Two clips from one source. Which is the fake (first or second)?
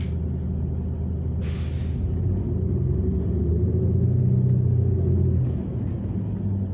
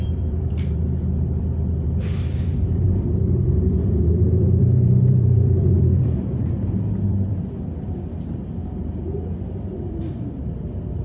second